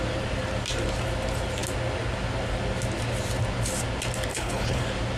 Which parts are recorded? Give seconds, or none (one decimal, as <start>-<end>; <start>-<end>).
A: 0.0-4.3; 4.8-5.2